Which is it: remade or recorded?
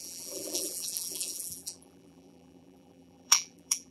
remade